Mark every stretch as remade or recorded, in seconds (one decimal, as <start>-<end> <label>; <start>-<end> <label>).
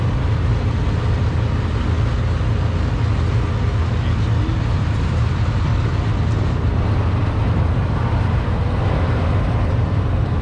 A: 0.0-0.5 remade; 0.5-5.2 recorded; 5.2-5.7 remade; 5.7-6.4 recorded; 6.4-10.4 remade